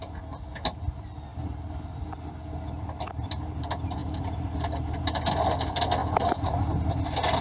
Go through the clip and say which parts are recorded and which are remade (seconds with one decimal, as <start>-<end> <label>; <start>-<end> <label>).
0.0-6.0 recorded; 6.0-6.5 remade; 6.5-7.4 recorded